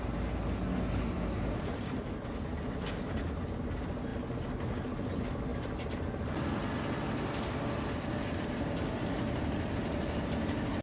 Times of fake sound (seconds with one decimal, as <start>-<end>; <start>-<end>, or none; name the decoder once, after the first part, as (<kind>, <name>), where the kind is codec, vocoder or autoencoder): none

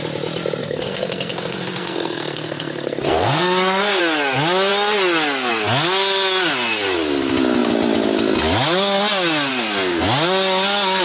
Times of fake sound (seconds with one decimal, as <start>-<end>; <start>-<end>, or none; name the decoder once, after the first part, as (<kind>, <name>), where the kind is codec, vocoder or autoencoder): 0.6-4.0 (codec, SNAC)

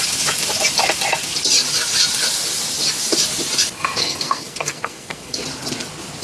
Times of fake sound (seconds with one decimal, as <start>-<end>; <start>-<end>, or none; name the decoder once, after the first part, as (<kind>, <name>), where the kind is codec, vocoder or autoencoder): 4.0-5.4 (codec, SNAC)

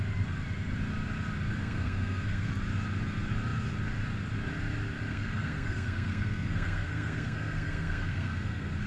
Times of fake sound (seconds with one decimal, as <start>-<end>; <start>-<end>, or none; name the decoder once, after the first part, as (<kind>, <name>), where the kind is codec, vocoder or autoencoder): 1.5-2.5 (codec, SNAC); 5.1-8.9